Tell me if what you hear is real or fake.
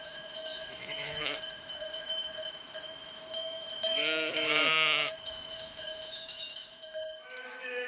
fake